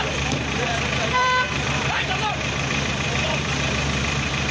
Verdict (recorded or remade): remade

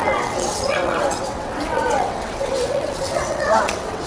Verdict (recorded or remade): remade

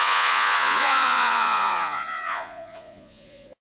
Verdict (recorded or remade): remade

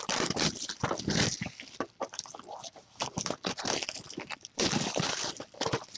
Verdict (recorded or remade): remade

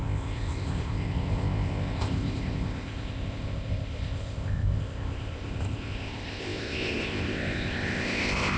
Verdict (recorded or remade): remade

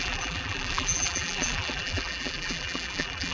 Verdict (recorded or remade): remade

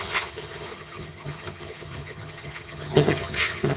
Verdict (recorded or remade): remade